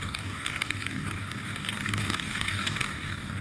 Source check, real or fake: fake